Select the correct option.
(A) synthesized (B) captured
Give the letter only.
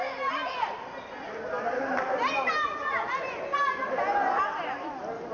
B